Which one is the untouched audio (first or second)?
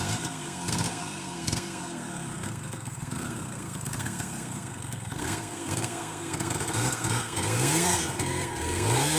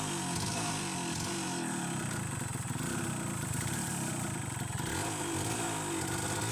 second